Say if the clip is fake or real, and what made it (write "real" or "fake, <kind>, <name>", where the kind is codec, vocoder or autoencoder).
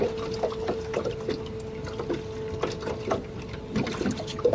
real